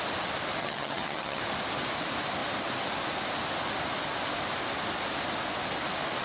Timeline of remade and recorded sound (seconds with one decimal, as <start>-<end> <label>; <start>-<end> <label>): 0.0-0.6 recorded; 0.6-1.4 remade; 1.4-6.2 recorded